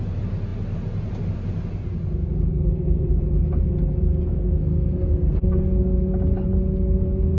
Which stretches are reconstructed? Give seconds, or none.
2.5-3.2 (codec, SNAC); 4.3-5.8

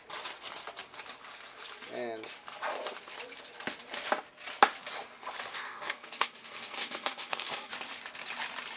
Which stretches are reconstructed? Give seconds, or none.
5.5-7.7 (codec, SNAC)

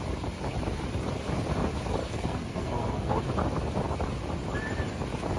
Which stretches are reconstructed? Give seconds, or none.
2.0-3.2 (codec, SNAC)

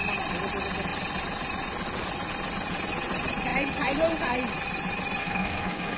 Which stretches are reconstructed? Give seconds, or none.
5.2-6.0 (codec, SNAC)